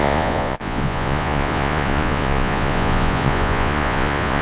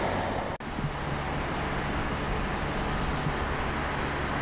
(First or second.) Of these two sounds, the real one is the second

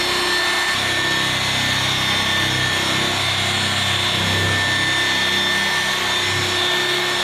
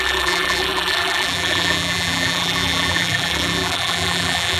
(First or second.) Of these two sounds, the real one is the first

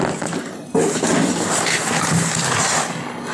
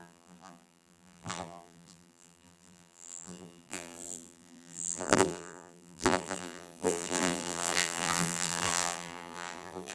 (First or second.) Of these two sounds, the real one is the first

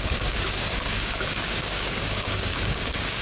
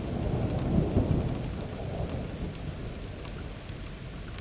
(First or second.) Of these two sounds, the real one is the second